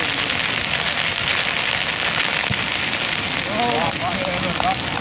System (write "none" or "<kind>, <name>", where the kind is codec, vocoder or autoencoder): none